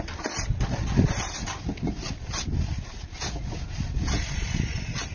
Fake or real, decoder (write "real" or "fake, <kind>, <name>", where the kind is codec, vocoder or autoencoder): real